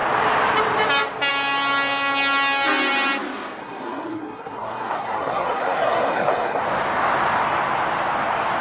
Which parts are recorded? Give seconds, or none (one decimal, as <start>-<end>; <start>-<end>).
0.0-3.6; 6.6-8.6